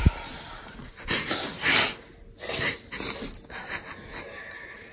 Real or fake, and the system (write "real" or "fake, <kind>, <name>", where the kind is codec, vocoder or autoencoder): real